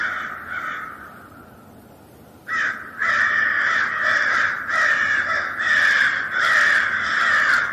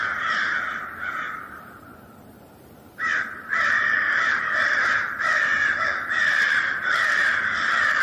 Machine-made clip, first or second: second